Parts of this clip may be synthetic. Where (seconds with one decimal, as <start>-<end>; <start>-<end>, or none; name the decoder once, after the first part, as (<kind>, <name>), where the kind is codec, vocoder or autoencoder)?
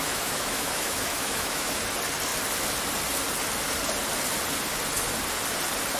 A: 0.0-1.8 (autoencoder, DAC-VAE)